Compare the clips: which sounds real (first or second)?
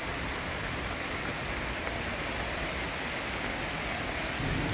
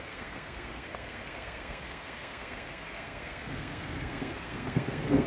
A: first